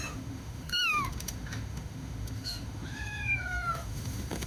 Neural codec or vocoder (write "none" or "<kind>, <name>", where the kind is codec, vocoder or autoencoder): autoencoder, DAC-VAE